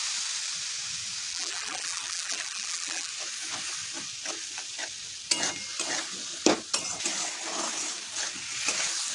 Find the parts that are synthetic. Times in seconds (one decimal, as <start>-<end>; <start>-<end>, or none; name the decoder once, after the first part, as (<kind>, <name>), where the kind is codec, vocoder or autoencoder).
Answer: 1.3-3.1 (vocoder, BigVGAN v2)